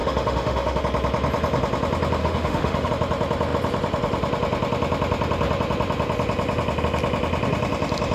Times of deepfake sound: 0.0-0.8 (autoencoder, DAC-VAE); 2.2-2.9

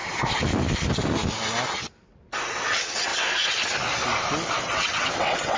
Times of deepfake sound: 2.5-3.1 (vocoder, WaveNeXt); 4.5-5.6

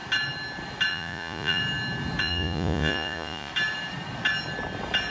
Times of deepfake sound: 0.9-1.6 (vocoder, Vocos); 2.2-3.5

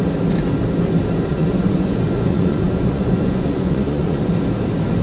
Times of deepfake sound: 1.3-4.3 (vocoder, Vocos)

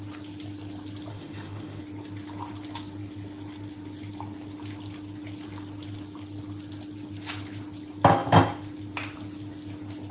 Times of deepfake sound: 1.1-1.8 (autoencoder, DAC-VAE)

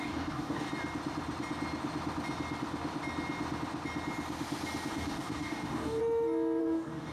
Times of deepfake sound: 0.0-0.7 (codec, DAC); 4.9-6.0; 6.6-7.1

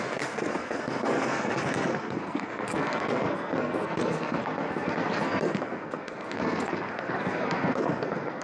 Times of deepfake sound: 0.0-8.4 (codec, SNAC)

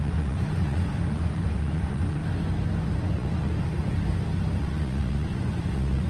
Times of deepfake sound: 0.0-2.2 (vocoder, Vocos); 3.0-3.9; 4.6-6.1